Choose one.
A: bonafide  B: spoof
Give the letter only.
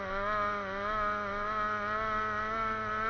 A